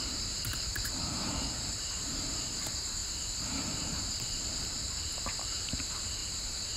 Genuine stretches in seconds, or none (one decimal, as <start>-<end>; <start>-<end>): none